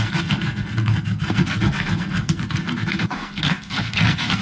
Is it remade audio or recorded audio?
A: remade